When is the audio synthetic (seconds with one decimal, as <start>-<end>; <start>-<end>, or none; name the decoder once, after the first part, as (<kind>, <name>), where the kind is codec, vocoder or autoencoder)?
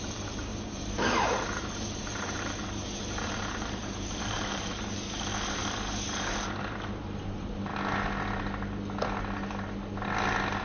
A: 0.0-5.6 (vocoder, BigVGAN v2); 6.6-7.7